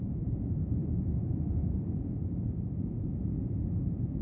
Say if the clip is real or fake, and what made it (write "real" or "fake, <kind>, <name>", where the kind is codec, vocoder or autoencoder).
fake, vocoder, Vocos